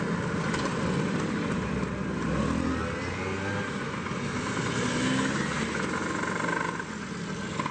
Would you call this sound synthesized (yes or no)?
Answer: no